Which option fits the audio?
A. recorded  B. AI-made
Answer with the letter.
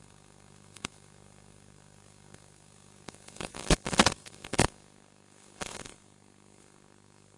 B